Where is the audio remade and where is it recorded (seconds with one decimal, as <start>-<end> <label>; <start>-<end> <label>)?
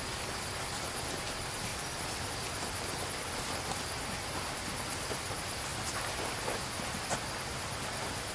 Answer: 0.0-1.7 recorded; 1.7-2.3 remade; 2.3-8.3 recorded